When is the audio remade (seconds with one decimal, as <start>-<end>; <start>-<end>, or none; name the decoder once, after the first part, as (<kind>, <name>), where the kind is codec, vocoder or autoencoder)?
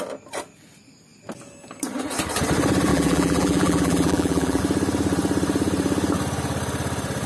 2.9-4.6 (vocoder, BigVGAN v2)